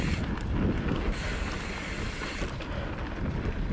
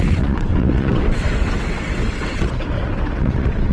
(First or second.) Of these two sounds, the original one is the first